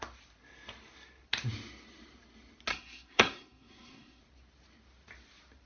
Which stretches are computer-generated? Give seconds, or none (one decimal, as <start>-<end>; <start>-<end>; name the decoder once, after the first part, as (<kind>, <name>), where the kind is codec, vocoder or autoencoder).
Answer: 2.7-4.2 (codec, SNAC)